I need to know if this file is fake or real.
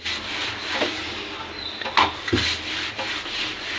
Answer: real